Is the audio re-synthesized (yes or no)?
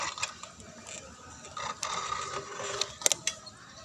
no